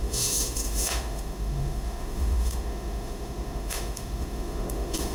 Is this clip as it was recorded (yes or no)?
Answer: no